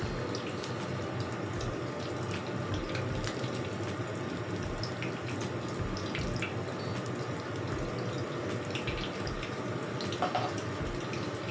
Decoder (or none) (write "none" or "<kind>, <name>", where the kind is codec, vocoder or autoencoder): none